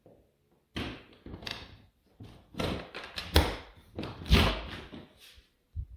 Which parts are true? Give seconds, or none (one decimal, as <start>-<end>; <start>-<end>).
0.0-1.5; 4.5-5.2